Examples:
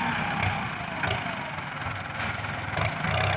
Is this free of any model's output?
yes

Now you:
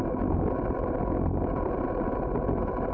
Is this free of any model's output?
yes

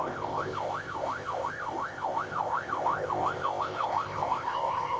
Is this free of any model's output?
no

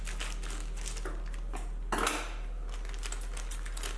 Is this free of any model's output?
yes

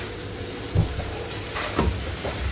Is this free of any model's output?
no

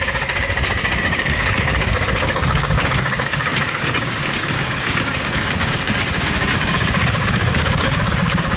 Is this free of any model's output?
no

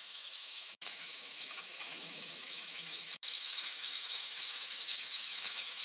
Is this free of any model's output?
no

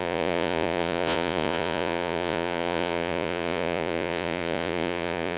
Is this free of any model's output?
no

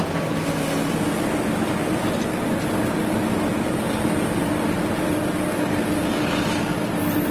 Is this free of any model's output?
yes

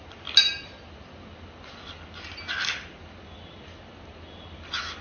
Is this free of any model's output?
yes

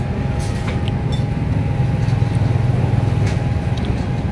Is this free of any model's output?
yes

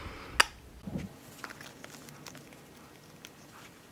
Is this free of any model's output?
yes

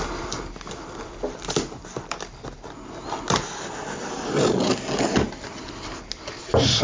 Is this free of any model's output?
yes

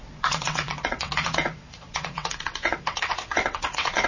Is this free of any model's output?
no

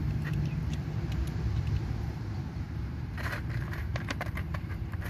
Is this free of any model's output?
no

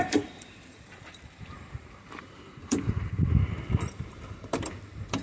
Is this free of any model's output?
no